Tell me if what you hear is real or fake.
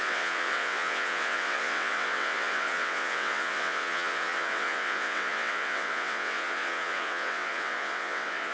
fake